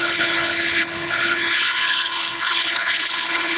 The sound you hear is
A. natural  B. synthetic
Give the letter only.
B